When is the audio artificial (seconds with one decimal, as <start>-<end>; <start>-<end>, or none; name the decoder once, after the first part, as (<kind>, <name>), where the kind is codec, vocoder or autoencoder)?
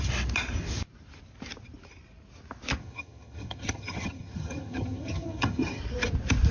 2.8-5.8 (vocoder, HiFi-GAN)